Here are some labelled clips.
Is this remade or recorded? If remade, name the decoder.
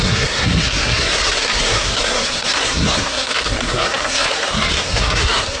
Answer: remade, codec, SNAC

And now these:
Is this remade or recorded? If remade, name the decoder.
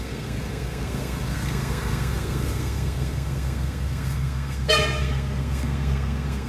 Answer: remade, codec, SNAC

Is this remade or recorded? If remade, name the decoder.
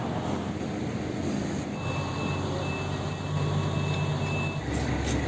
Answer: recorded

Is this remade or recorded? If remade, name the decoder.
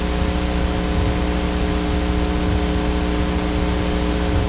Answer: recorded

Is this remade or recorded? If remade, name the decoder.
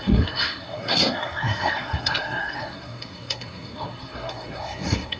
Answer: remade, codec, SNAC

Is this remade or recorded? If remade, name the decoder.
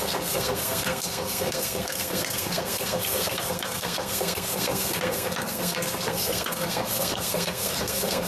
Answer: remade, codec, SNAC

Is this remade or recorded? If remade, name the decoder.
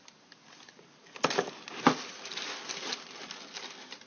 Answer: recorded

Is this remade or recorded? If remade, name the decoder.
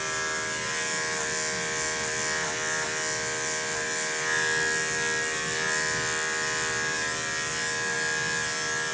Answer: recorded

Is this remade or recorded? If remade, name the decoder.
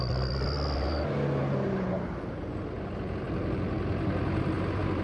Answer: recorded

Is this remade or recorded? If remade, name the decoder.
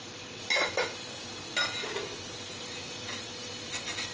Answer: recorded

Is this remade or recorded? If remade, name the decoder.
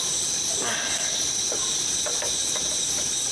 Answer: recorded